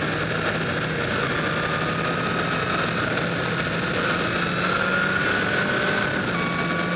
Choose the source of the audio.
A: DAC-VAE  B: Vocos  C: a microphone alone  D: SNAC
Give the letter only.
C